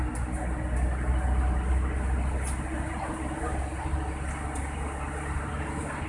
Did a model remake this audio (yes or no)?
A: no